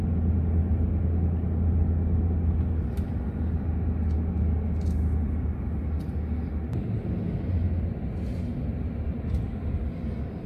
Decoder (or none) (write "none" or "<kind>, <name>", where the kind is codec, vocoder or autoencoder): none